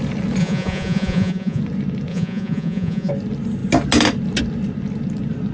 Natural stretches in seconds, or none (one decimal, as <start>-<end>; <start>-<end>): 0.0-0.4; 1.6-2.1; 3.1-5.5